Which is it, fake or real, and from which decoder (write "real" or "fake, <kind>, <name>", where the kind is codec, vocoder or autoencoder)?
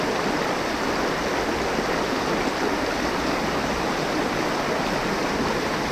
real